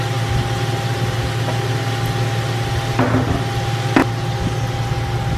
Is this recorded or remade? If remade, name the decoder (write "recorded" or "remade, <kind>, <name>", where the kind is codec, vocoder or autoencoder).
recorded